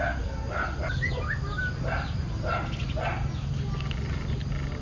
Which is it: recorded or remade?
recorded